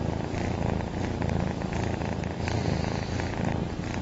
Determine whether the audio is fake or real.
real